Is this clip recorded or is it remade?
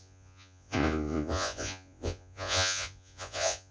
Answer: remade